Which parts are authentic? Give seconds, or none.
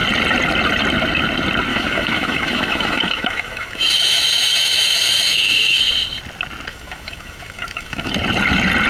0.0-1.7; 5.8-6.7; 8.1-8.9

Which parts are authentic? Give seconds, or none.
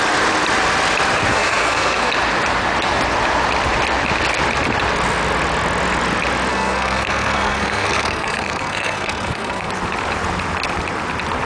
0.0-1.3; 2.1-6.5; 9.7-11.5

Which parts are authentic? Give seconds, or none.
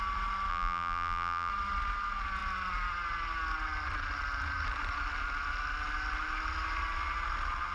0.0-0.5; 1.5-7.7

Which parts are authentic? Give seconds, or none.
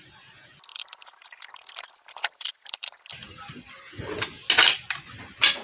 0.0-0.7; 4.1-5.6